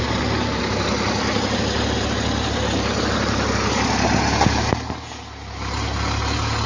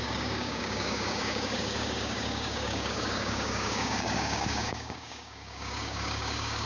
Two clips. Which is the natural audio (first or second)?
first